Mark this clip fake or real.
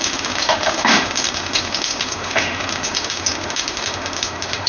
fake